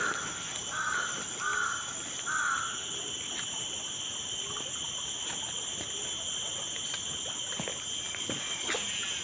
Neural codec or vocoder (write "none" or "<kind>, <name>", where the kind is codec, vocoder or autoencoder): none